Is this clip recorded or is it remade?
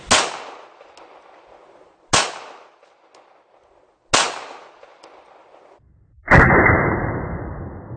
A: recorded